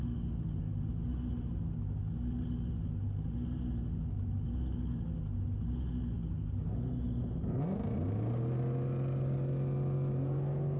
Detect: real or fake real